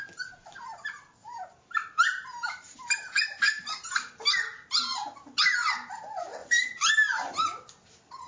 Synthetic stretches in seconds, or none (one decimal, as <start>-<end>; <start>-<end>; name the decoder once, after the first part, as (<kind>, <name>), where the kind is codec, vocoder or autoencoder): 1.2-3.9 (vocoder, BigVGAN v2); 6.4-6.9